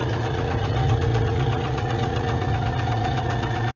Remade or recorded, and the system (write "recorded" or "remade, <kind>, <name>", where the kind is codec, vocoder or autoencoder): remade, vocoder, Vocos